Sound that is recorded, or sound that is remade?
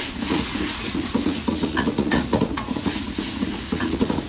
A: remade